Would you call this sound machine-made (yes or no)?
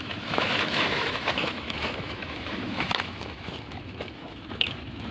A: yes